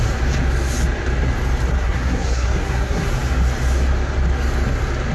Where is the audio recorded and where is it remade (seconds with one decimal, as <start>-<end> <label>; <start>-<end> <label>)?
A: 0.0-1.7 recorded; 1.7-3.1 remade; 3.1-5.1 recorded